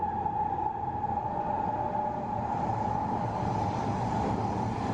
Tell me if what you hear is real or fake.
real